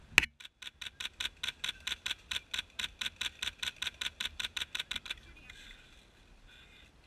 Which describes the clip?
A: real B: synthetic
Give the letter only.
A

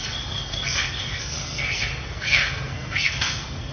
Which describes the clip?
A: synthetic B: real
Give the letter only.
A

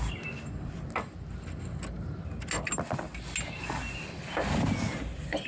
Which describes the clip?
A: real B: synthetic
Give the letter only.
A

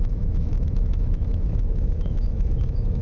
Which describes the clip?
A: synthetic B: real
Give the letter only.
A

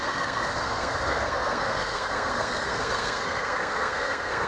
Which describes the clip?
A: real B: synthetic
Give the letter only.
B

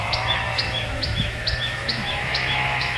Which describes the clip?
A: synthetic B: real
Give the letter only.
A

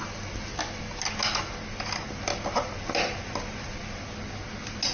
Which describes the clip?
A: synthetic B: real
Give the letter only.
B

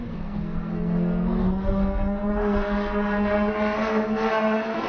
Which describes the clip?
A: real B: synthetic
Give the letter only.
B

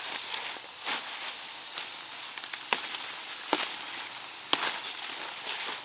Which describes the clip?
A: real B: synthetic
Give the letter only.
A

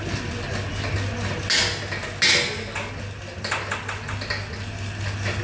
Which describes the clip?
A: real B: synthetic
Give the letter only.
A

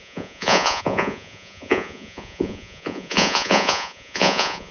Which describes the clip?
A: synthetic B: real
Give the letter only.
A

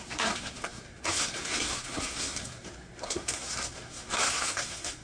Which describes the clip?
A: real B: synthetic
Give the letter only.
B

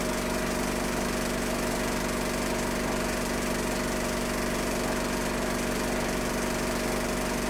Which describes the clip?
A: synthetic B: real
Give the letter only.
B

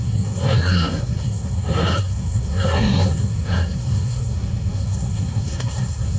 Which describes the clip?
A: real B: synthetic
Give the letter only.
B